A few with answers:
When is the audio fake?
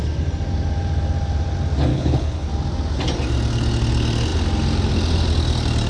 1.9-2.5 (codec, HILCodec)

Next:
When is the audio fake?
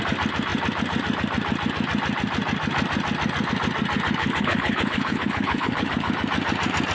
4.2-6.1 (codec, HILCodec)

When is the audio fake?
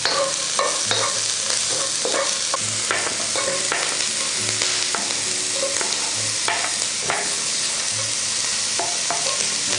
7.0-7.8 (codec, HILCodec)